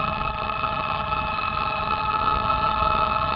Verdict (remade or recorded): remade